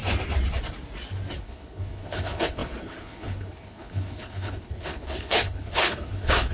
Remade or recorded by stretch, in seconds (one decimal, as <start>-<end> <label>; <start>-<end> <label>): 0.0-1.4 recorded; 1.4-6.5 remade